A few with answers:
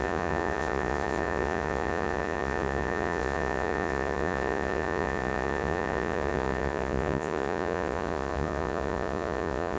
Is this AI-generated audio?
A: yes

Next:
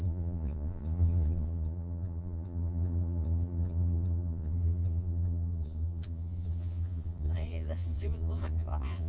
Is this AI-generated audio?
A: yes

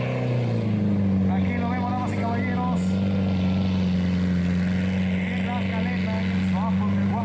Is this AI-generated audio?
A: no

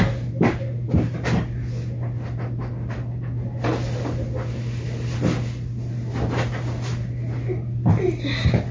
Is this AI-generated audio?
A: no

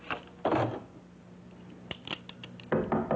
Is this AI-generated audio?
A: no